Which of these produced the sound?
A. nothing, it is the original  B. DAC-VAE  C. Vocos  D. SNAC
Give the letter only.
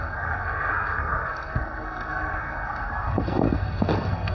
D